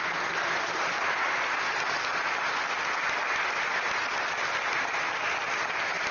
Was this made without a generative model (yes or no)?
yes